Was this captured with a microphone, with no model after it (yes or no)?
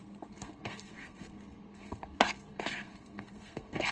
no